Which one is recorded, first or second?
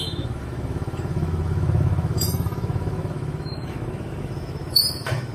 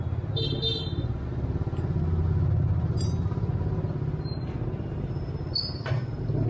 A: second